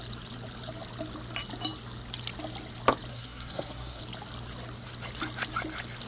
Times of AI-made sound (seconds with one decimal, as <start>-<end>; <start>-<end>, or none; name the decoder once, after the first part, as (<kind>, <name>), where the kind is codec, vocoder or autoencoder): 3.1-4.0 (codec, SNAC)

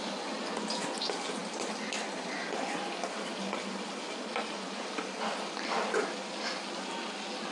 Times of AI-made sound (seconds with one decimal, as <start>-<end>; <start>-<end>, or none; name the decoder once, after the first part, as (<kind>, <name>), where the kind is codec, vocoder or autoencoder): none